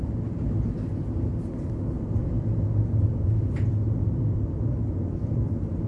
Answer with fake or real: real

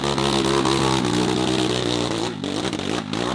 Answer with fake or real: real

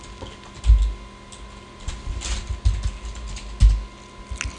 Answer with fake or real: real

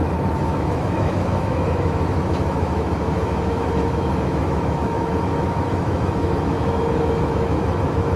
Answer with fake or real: fake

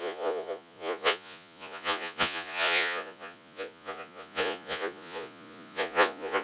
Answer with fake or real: fake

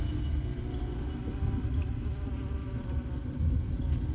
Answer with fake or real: real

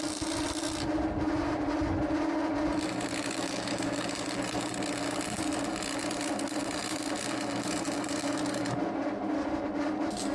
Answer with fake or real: real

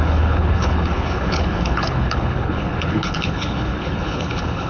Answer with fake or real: fake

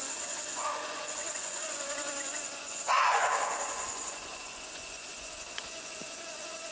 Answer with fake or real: fake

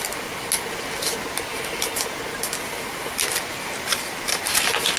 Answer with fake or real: real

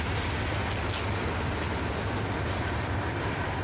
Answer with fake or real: real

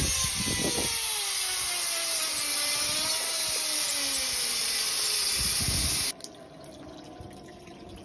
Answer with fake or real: real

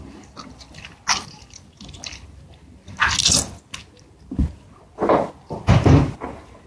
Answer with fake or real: real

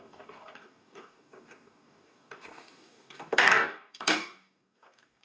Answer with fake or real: fake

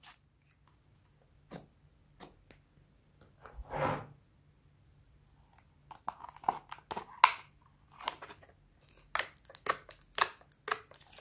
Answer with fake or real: real